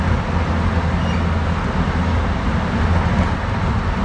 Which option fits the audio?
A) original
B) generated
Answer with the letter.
A